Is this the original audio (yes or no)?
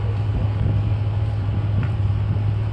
yes